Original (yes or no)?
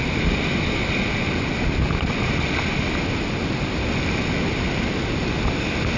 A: yes